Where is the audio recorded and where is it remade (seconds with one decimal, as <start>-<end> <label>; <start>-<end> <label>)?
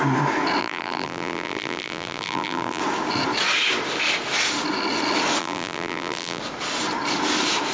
0.0-0.6 recorded; 0.6-2.8 remade; 2.8-5.4 recorded; 5.4-6.4 remade; 6.4-7.7 recorded